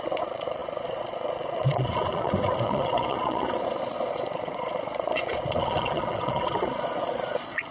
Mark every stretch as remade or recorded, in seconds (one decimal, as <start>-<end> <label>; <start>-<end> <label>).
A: 0.0-7.7 remade